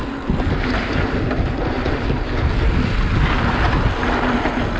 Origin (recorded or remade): recorded